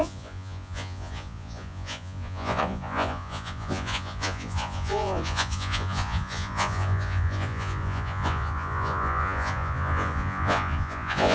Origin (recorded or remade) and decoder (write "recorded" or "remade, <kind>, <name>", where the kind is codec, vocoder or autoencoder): remade, vocoder, Vocos